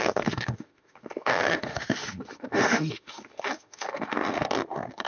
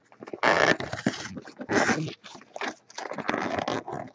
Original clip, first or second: second